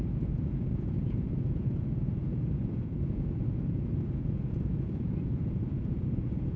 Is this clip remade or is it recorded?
remade